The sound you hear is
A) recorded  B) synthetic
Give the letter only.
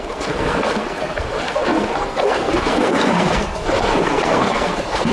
B